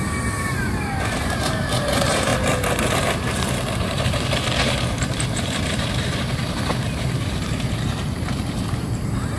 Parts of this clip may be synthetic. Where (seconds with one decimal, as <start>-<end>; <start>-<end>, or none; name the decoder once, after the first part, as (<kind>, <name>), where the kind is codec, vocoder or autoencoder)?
0.0-2.3 (vocoder, BigVGAN v2); 2.9-9.4